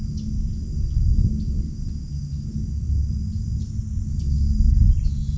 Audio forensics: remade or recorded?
recorded